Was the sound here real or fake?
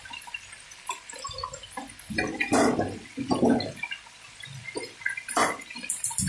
real